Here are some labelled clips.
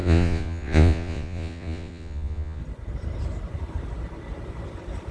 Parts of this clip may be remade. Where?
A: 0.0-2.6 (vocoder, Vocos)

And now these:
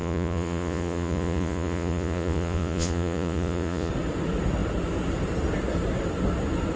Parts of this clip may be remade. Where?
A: 0.0-3.9 (vocoder, Vocos)

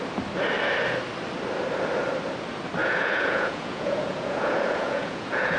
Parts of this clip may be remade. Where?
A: 2.8-5.6 (vocoder, Vocos)

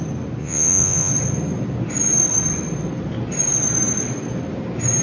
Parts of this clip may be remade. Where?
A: 0.4-1.1 (vocoder, Vocos)

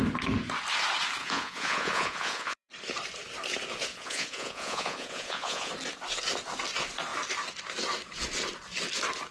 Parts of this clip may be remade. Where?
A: 1.2-2.7 (vocoder, Vocos); 3.9-5.7

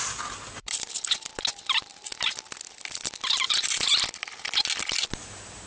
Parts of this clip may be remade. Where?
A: none

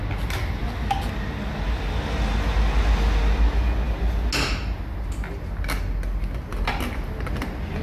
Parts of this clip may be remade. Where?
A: none

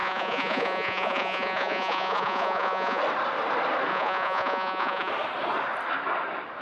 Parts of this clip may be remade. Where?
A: 0.0-3.0 (vocoder, Vocos); 3.9-5.1